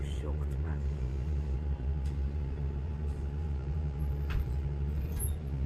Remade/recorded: remade